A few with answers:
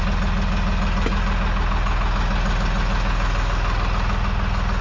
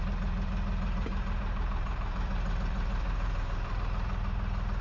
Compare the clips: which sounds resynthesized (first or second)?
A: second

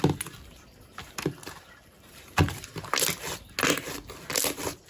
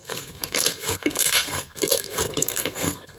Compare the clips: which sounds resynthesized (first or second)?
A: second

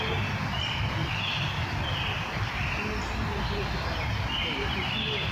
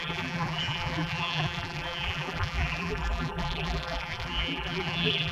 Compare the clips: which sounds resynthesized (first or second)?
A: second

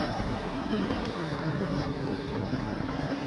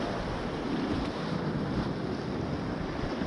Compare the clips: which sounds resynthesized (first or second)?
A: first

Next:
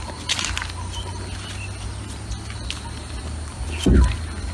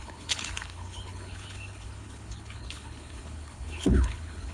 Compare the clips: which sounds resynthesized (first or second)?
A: second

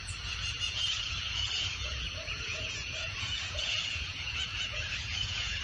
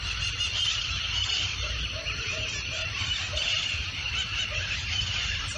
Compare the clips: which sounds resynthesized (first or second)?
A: first